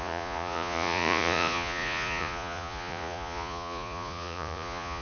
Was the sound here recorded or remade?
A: remade